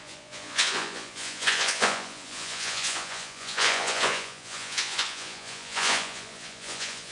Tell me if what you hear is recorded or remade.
remade